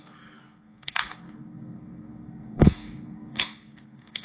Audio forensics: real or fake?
fake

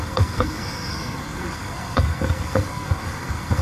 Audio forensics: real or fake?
fake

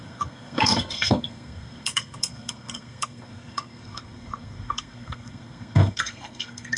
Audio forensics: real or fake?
fake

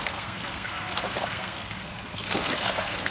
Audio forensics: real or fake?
fake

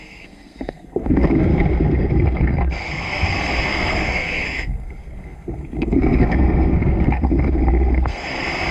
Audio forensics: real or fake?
fake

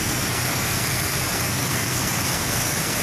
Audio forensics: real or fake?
fake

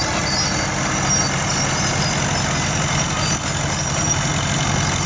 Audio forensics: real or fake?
real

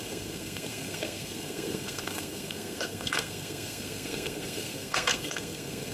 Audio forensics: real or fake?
fake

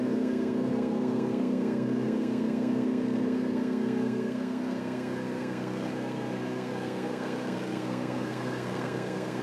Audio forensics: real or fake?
fake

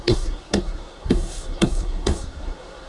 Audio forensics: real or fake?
fake